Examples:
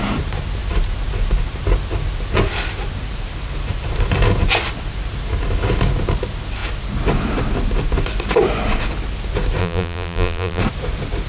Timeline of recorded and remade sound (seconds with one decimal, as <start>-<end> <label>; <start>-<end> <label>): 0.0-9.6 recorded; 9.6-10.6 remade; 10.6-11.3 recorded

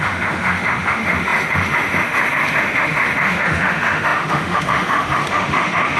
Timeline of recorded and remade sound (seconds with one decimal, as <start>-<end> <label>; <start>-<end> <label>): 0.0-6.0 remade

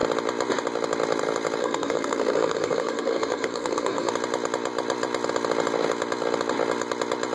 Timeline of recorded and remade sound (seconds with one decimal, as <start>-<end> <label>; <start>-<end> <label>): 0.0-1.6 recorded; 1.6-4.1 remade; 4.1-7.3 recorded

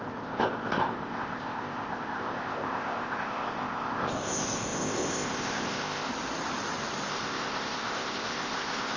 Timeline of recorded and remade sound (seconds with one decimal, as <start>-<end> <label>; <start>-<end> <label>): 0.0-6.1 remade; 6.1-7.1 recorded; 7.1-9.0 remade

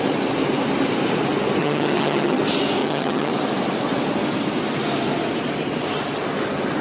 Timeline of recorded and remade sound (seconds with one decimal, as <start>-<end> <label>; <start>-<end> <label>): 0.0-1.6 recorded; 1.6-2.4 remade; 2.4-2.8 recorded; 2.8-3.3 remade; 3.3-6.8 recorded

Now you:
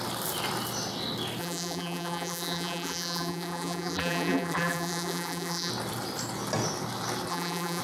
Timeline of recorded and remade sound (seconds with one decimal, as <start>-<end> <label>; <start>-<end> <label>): 0.0-1.4 recorded; 1.4-5.7 remade; 5.7-7.3 recorded; 7.3-7.8 remade